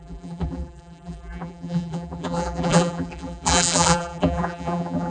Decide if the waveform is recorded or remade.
remade